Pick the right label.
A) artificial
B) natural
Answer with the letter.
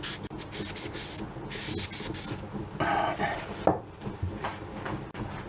B